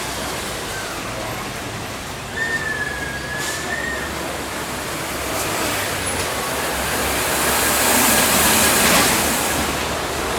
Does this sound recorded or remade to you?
recorded